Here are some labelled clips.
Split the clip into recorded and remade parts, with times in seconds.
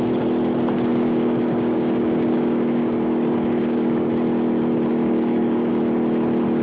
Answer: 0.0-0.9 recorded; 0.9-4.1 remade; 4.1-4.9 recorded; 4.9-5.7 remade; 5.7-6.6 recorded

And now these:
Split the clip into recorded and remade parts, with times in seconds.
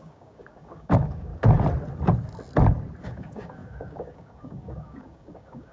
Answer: 0.0-1.3 remade; 1.3-3.0 recorded; 3.0-5.7 remade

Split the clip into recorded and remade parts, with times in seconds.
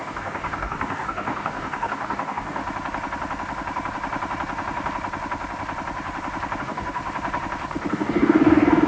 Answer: 0.0-2.6 remade; 2.6-6.6 recorded; 6.6-7.0 remade; 7.0-7.9 recorded; 7.9-8.9 remade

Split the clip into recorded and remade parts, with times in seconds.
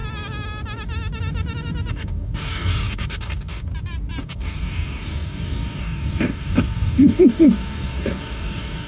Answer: 0.0-1.9 recorded; 1.9-3.7 remade; 3.7-4.2 recorded; 4.2-8.9 remade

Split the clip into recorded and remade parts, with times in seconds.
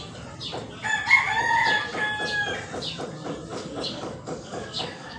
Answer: 0.0-3.5 recorded; 3.5-5.2 remade